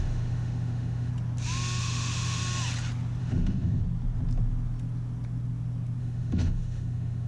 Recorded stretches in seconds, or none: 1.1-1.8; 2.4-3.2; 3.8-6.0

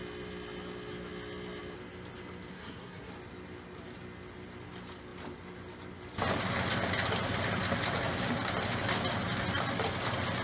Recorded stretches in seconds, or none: 0.0-2.5; 3.1-10.4

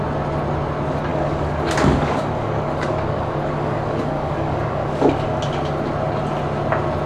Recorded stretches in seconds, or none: 0.0-1.1; 5.4-7.1